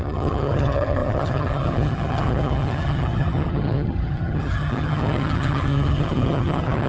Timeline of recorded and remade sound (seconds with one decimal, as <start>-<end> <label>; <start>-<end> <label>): 0.0-6.9 remade